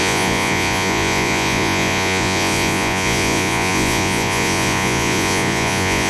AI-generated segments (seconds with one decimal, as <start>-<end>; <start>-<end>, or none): 0.0-6.1